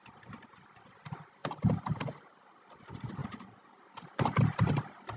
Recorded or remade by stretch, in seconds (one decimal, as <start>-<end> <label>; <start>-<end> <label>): 0.0-1.4 recorded; 1.4-2.7 remade; 2.7-3.2 recorded; 3.2-4.4 remade; 4.4-5.2 recorded